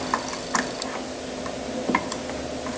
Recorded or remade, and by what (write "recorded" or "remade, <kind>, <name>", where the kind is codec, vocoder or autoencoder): recorded